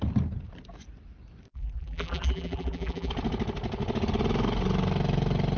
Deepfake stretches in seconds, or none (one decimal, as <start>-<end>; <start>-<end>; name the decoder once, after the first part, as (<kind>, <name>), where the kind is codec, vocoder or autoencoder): 1.5-3.1 (vocoder, BigVGAN v2)